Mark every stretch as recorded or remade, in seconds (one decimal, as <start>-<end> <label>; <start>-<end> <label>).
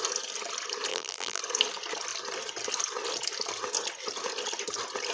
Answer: 0.0-0.9 recorded; 0.9-1.4 remade; 1.4-5.1 recorded